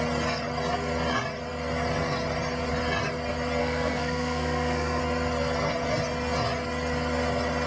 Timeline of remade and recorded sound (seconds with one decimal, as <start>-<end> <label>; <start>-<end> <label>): 0.0-3.6 recorded; 3.6-5.0 remade; 5.0-7.7 recorded